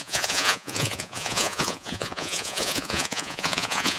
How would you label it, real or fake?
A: fake